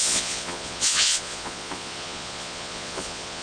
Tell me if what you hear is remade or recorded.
remade